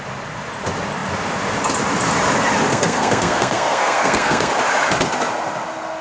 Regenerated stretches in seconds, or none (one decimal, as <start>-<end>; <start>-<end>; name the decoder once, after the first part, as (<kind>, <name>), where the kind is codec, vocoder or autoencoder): 2.7-4.5 (codec, SNAC)